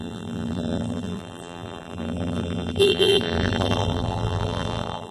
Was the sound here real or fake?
fake